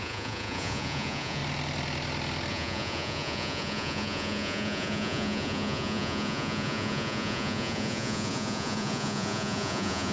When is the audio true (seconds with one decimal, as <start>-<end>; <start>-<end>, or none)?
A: 1.4-2.5